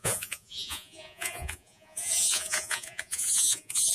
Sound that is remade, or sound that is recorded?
remade